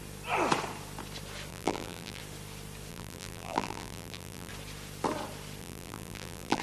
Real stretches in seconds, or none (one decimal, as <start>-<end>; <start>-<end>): 0.0-1.5; 2.2-2.9; 4.5-5.6